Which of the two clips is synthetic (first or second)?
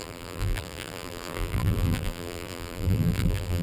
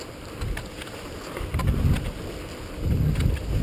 first